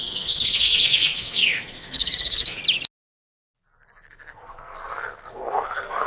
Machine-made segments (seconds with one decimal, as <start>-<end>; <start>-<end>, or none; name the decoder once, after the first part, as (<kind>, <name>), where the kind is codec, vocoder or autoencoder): 0.0-2.6 (codec, SNAC); 4.1-6.1